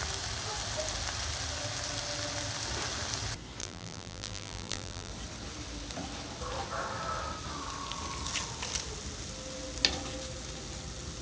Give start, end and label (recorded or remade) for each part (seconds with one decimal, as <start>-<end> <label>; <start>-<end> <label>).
0.0-3.6 recorded; 3.6-5.1 remade; 5.1-11.2 recorded